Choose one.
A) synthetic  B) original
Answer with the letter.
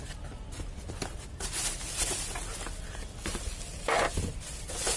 B